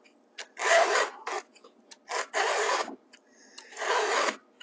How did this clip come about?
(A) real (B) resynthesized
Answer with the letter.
A